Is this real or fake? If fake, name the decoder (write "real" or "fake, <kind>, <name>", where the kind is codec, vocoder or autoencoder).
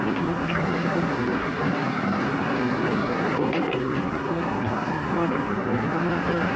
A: fake, codec, SNAC